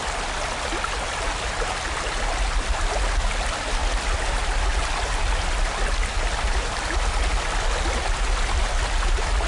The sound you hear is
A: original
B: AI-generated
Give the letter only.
A